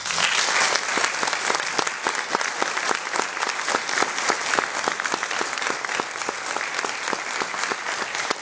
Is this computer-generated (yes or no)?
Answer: no